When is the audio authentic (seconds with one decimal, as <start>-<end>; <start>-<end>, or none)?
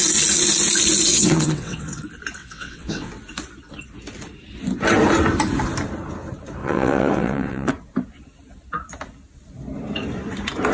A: 0.0-1.1; 2.0-2.4; 3.1-6.6; 7.7-10.7